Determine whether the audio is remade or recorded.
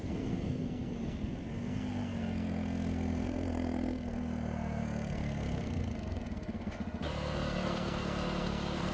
remade